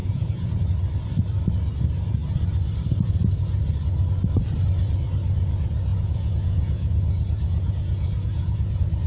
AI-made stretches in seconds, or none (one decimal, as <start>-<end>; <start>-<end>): 0.0-0.7; 5.9-8.7